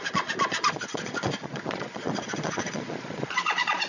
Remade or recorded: remade